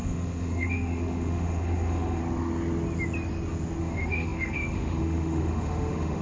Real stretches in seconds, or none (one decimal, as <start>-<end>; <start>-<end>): 2.2-3.8